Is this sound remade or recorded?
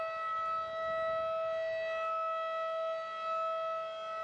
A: recorded